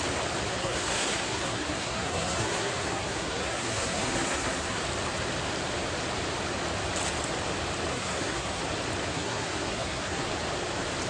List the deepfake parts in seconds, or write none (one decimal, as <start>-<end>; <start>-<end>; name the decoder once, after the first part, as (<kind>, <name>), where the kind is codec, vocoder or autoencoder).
0.6-4.8 (codec, SNAC); 7.9-8.6; 9.1-10.3